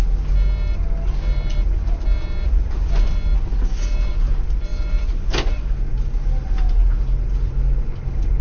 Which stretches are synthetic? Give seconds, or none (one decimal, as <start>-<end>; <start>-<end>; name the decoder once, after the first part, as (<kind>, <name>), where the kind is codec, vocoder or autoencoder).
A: none